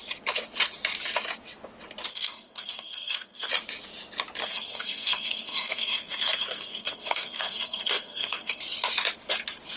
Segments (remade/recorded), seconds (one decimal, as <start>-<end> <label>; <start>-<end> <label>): 0.0-2.1 recorded; 2.1-3.5 remade; 3.5-4.4 recorded; 4.4-8.6 remade; 8.6-9.8 recorded

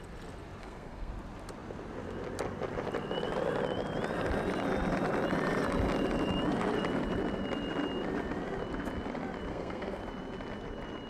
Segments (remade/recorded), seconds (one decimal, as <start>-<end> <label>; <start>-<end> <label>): 0.0-0.6 recorded; 0.6-1.1 remade; 1.1-9.5 recorded; 9.5-10.0 remade; 10.0-11.1 recorded

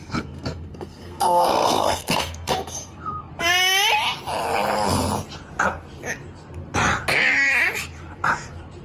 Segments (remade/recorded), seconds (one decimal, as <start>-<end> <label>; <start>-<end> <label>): 0.0-3.3 remade; 3.3-8.8 recorded

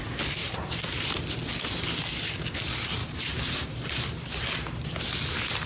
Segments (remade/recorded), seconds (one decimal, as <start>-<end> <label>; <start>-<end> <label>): 0.0-0.4 recorded; 0.4-1.0 remade; 1.0-3.0 recorded; 3.0-4.4 remade; 4.4-5.7 recorded

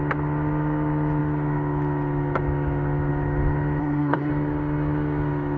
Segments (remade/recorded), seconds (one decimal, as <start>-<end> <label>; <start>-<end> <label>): 0.0-3.8 recorded; 3.8-4.3 remade; 4.3-5.6 recorded

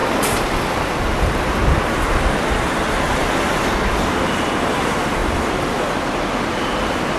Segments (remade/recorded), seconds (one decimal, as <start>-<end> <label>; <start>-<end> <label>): 0.0-7.2 recorded